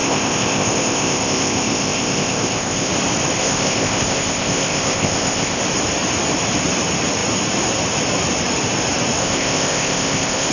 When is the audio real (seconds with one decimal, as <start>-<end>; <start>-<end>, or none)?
2.9-3.4; 5.6-9.2